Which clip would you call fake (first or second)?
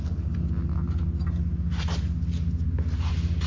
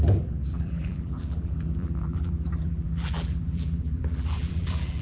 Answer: second